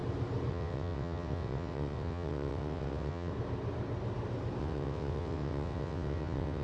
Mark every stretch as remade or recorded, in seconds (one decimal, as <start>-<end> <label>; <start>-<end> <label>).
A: 0.0-0.5 recorded; 0.5-3.3 remade; 3.3-4.6 recorded; 4.6-6.6 remade